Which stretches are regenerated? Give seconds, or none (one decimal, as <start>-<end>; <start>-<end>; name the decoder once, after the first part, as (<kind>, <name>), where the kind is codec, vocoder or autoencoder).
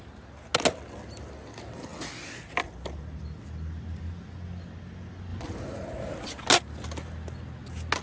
5.3-6.5 (vocoder, BigVGAN v2)